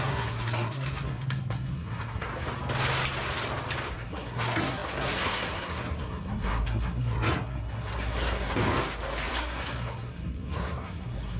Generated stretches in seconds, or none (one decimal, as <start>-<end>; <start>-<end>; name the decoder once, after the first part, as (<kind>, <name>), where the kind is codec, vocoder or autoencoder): 0.0-2.3 (codec, SNAC); 3.9-8.6; 9.3-11.4